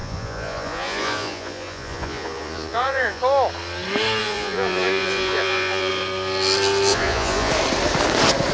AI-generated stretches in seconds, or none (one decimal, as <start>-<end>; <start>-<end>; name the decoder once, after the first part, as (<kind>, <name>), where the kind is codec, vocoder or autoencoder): 0.0-3.2 (vocoder, Vocos); 4.2-5.9; 6.9-7.5